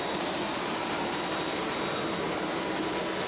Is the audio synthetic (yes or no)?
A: no